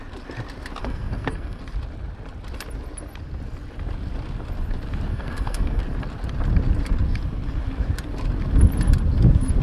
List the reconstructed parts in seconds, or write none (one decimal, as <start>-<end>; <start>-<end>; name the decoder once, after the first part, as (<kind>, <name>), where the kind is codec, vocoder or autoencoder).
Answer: 0.8-1.6 (codec, SNAC); 5.1-5.8